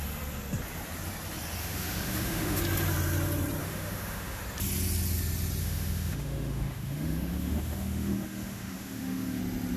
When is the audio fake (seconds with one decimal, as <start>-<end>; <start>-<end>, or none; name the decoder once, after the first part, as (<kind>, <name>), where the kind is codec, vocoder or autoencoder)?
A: 1.6-2.6 (autoencoder, DAC-VAE); 3.6-4.4; 5.6-9.4